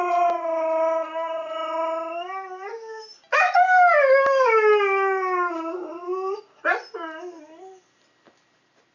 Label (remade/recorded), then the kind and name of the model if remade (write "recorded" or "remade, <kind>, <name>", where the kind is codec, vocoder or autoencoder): recorded